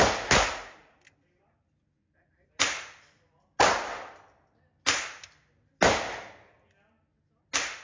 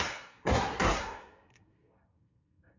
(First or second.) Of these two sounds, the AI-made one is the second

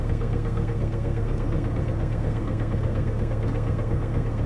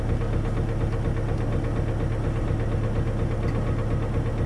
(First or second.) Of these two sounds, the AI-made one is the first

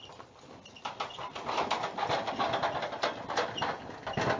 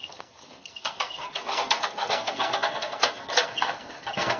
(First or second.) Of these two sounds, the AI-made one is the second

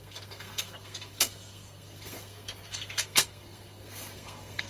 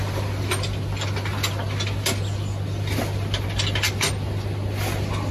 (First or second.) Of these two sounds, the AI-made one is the first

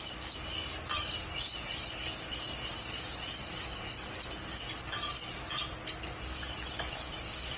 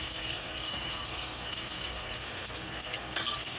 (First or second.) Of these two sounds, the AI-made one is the second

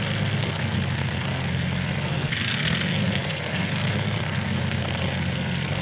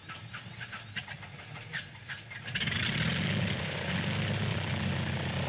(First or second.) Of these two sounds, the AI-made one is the first